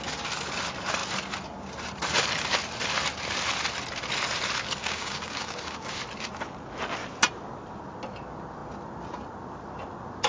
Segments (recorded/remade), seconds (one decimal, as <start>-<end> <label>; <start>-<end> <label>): 0.0-4.8 recorded; 4.8-6.0 remade; 6.0-10.3 recorded